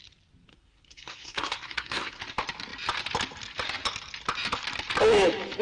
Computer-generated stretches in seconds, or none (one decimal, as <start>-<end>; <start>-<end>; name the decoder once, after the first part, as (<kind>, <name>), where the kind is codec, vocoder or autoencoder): 0.5-2.2 (codec, SNAC)